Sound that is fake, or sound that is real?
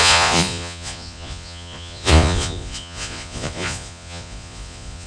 fake